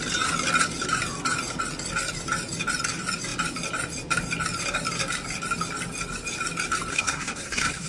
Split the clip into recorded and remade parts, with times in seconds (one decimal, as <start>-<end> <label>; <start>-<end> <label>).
0.0-6.9 recorded; 6.9-7.9 remade